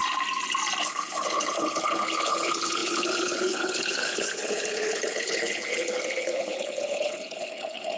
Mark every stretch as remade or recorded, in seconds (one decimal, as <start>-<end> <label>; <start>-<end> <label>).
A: 0.0-0.8 recorded; 0.8-8.0 remade